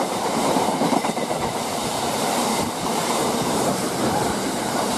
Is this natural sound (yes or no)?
no